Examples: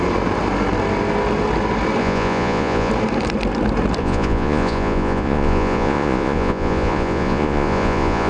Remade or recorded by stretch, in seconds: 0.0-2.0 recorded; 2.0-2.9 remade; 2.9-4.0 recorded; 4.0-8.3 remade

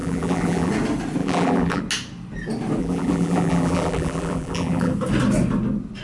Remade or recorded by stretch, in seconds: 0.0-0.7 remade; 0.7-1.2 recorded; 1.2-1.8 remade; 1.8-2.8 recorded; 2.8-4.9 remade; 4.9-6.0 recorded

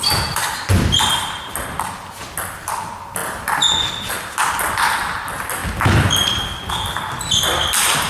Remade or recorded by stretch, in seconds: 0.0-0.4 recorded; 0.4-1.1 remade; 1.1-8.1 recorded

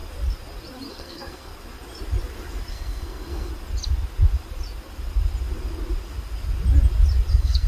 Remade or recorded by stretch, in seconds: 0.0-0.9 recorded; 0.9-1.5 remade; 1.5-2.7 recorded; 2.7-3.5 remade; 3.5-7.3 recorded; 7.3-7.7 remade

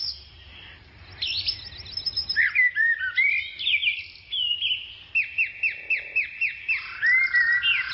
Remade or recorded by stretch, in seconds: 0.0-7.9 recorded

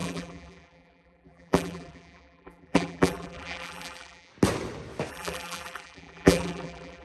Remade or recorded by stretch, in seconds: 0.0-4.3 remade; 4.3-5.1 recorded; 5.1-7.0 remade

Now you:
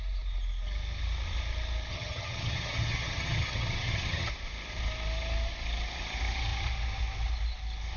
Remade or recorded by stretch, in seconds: 0.0-1.9 recorded; 1.9-4.3 remade; 4.3-8.0 recorded

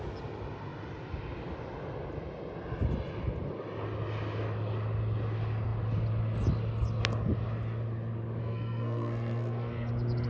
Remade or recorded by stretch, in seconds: 0.0-8.4 recorded; 8.4-9.9 remade; 9.9-10.3 recorded